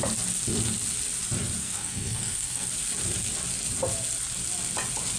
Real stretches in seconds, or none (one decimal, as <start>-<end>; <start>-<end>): 0.0-1.6; 2.7-5.2